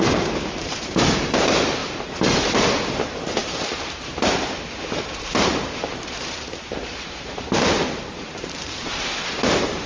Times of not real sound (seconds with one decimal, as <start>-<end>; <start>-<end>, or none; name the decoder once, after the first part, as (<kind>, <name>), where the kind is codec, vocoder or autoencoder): 0.0-9.9 (vocoder, BigVGAN v2)